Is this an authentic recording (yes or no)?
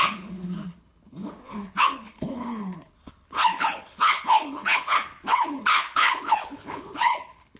no